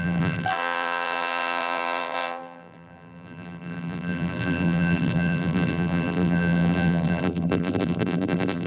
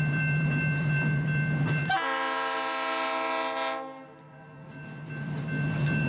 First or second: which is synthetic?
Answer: first